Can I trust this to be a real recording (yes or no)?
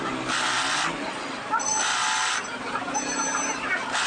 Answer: yes